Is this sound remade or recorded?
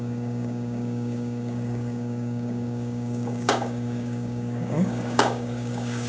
remade